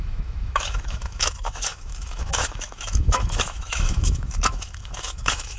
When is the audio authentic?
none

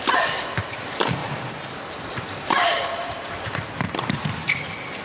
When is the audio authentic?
0.0-1.2; 4.2-5.0

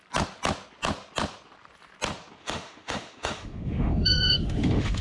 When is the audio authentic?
0.0-2.4

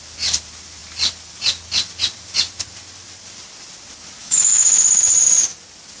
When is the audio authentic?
0.0-4.2; 4.8-6.0